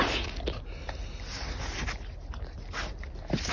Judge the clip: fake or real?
real